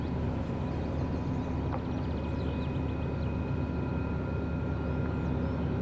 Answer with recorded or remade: recorded